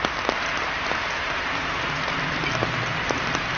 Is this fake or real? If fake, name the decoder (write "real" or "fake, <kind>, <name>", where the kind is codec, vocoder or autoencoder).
real